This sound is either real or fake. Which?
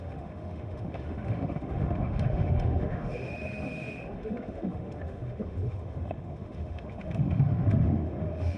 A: fake